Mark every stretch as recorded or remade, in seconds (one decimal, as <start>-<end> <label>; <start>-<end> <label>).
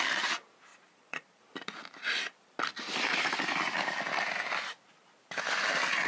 0.0-0.7 recorded; 0.7-1.4 remade; 1.4-6.1 recorded